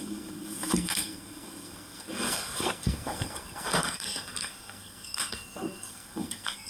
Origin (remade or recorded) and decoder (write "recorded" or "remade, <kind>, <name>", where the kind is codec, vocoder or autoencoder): remade, codec, SNAC